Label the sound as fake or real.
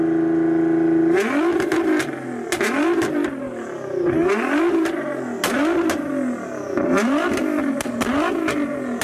real